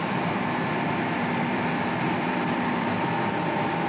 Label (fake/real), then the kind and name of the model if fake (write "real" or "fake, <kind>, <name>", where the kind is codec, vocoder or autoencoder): fake, vocoder, BigVGAN v2